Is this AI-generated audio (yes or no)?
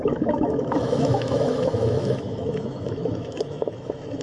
yes